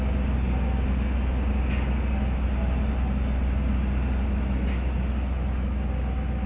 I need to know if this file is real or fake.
real